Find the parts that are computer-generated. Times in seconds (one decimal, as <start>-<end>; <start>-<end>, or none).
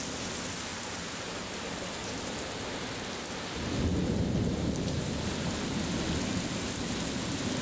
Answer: 0.7-1.5; 2.0-2.6; 3.9-5.1